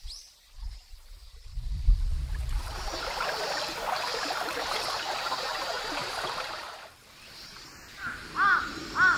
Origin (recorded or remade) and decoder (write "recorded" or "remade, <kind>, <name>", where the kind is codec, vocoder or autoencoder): remade, vocoder, BigVGAN v2